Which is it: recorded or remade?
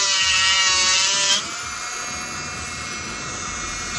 remade